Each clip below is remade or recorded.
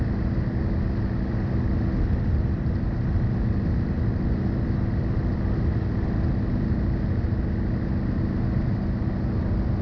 recorded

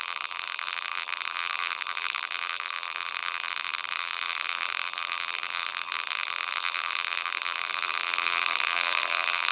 remade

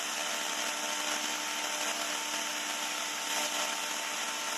recorded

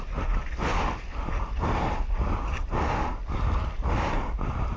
recorded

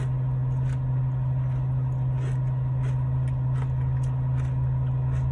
recorded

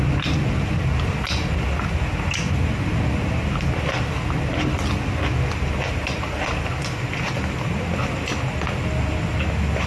recorded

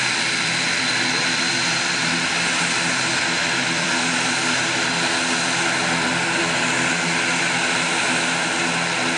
remade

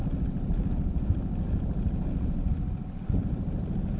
recorded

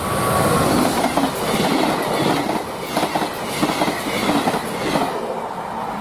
recorded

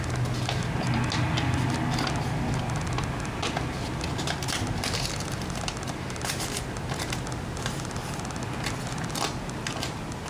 recorded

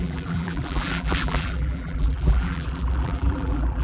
remade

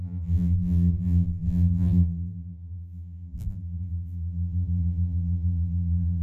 remade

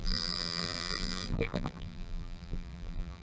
remade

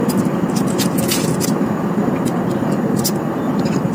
recorded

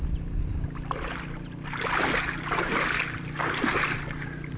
recorded